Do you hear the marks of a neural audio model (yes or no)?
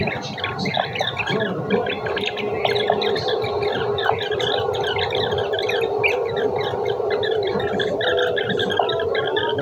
no